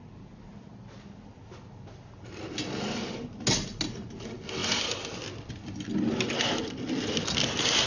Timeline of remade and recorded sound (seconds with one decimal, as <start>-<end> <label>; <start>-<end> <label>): 0.0-7.9 recorded